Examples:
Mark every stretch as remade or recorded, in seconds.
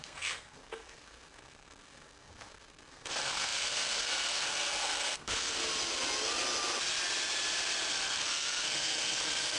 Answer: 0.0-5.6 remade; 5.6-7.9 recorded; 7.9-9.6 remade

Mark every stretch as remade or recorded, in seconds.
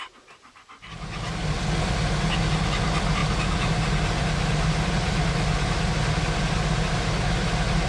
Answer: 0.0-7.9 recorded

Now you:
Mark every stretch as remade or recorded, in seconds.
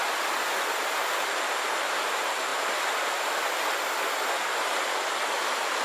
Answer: 0.0-5.8 recorded